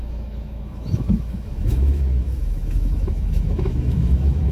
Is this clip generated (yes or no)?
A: yes